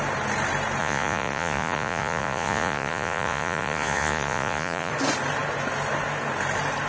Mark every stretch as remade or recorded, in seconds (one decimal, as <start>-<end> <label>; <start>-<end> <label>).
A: 0.0-0.8 recorded; 0.8-4.9 remade; 4.9-6.9 recorded

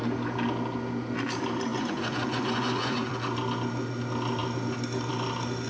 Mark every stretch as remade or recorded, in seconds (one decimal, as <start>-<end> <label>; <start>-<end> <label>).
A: 0.0-1.7 recorded; 1.7-3.1 remade; 3.1-5.7 recorded

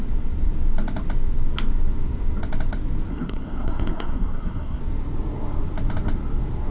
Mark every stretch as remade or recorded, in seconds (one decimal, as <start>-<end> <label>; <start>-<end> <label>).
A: 0.0-3.1 recorded; 3.1-4.8 remade; 4.8-6.7 recorded

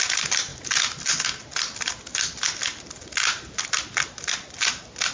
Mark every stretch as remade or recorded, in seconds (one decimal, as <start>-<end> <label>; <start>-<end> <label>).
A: 0.0-5.1 recorded